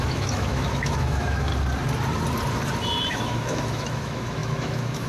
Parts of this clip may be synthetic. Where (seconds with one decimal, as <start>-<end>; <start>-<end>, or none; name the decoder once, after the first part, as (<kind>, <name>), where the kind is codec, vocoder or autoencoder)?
0.0-1.5 (autoencoder, DAC-VAE); 3.1-5.1